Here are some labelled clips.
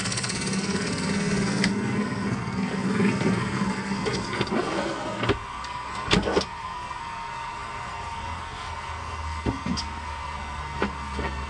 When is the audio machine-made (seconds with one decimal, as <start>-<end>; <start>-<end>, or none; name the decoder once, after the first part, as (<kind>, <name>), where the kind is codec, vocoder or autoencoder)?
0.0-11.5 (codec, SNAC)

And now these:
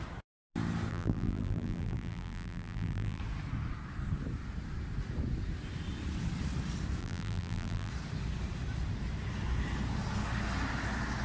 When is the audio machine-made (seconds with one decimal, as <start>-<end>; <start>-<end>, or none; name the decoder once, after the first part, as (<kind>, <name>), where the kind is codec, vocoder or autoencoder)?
0.9-3.2 (vocoder, BigVGAN v2); 7.0-7.9

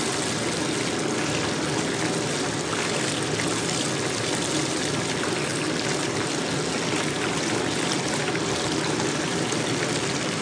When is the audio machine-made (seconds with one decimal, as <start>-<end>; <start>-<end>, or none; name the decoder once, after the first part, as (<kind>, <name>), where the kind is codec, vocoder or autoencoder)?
none